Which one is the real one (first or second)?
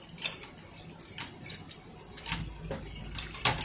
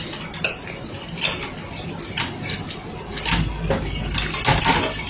second